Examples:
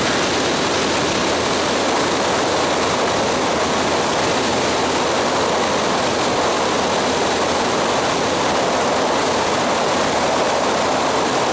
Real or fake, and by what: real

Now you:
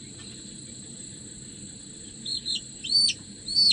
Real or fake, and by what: real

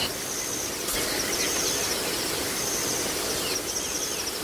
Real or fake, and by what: real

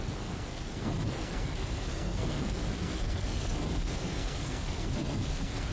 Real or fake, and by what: fake, codec, SNAC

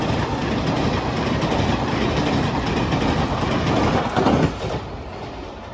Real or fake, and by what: real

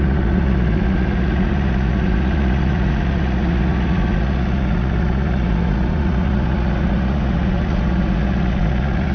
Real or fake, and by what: fake, vocoder, Vocos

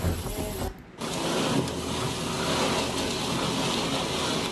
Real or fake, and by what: real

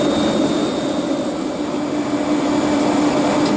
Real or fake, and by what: real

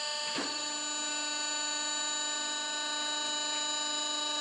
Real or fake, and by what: real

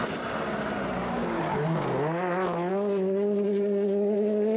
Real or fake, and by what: real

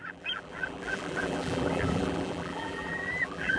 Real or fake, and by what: fake, vocoder, BigVGAN v2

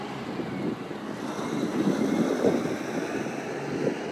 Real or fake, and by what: real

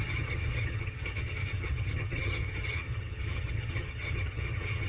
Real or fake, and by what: fake, vocoder, HiFi-GAN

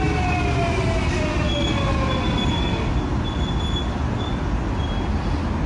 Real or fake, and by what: real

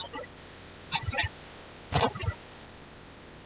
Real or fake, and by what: real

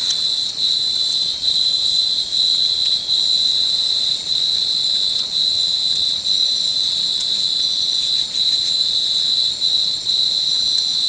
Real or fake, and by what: fake, vocoder, Vocos